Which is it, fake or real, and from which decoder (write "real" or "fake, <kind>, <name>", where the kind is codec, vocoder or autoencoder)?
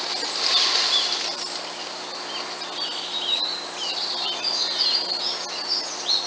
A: real